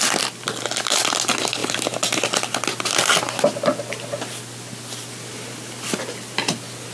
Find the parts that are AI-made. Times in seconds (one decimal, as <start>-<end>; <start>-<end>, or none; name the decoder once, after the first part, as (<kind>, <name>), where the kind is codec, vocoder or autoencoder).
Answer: none